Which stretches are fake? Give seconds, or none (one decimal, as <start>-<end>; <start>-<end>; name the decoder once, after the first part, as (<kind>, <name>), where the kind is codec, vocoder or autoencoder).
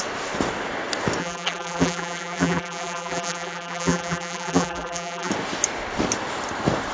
1.2-5.3 (vocoder, BigVGAN v2)